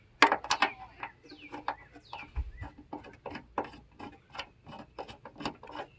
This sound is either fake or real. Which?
real